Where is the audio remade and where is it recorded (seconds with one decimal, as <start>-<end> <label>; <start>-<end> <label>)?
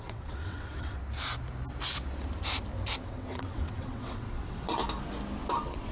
0.0-1.0 remade; 1.0-3.1 recorded; 3.1-4.8 remade; 4.8-5.5 recorded; 5.5-5.9 remade